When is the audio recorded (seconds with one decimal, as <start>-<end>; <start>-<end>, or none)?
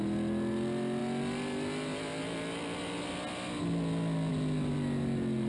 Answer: 0.0-5.5